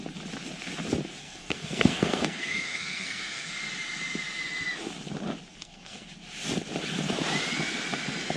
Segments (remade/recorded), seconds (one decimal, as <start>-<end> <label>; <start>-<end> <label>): 0.0-1.2 recorded; 1.2-3.5 remade; 3.5-5.5 recorded; 5.5-6.1 remade; 6.1-8.4 recorded